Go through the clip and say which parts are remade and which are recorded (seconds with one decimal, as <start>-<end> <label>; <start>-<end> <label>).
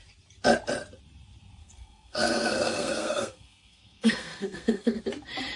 0.0-1.6 recorded; 1.6-5.0 remade; 5.0-5.6 recorded